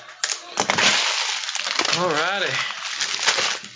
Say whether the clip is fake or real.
real